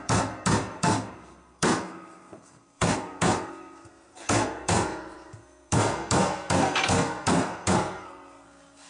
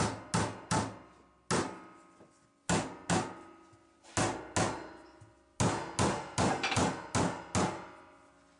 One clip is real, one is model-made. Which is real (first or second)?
second